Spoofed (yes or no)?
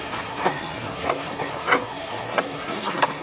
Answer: yes